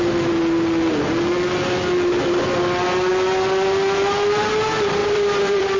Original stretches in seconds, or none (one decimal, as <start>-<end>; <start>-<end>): 0.0-5.0